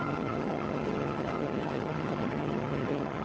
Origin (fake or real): fake